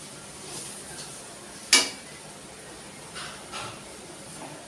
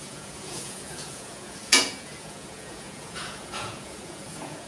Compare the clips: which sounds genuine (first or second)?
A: first